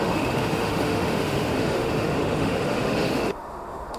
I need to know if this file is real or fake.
fake